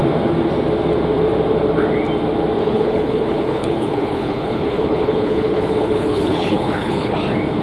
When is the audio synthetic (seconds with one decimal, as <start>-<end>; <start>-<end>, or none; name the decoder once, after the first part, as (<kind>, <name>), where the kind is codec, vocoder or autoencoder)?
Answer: 2.6-7.1 (codec, HILCodec)